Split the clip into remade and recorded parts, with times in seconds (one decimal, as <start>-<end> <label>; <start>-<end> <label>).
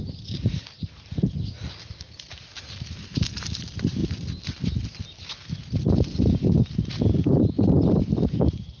0.0-4.0 remade; 4.0-6.2 recorded; 6.2-8.8 remade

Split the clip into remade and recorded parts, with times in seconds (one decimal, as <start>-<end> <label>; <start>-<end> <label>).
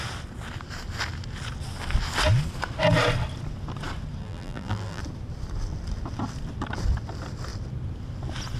0.0-4.2 recorded; 4.2-5.0 remade; 5.0-8.6 recorded